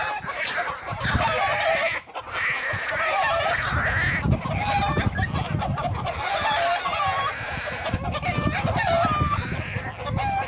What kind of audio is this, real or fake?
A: real